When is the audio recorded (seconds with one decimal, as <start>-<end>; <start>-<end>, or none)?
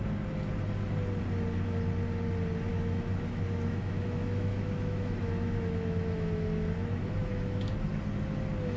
0.0-2.7; 7.7-8.8